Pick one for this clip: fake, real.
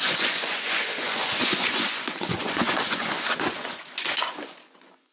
fake